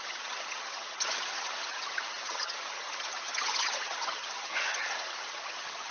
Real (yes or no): no